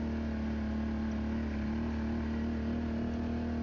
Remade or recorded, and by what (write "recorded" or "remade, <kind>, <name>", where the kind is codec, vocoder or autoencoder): recorded